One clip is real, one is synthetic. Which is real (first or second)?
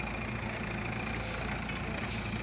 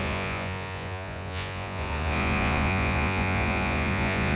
first